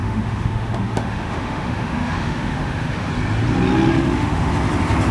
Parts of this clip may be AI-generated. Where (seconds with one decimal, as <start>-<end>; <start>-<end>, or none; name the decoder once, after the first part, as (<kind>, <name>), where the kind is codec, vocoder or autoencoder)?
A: 0.0-3.1 (autoencoder, DAC-VAE); 3.9-4.5